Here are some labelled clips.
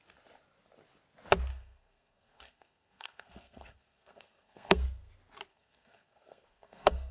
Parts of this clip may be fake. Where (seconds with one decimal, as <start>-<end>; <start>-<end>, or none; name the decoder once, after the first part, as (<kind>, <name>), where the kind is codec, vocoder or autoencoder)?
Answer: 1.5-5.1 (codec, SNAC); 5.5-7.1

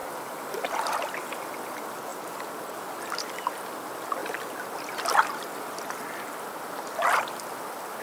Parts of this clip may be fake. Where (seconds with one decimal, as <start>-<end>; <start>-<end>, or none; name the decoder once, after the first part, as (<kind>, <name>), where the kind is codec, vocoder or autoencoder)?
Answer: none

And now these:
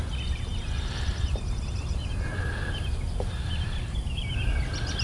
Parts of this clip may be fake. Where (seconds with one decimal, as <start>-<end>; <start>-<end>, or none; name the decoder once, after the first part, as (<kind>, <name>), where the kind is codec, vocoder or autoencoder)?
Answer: none

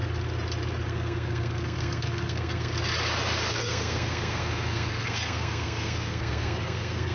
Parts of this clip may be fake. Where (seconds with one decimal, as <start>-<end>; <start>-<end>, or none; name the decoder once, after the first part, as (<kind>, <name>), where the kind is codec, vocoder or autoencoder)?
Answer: 0.9-2.7 (codec, SNAC); 3.5-7.1